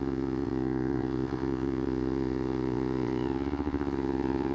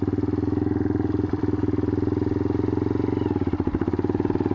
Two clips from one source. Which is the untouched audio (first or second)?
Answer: second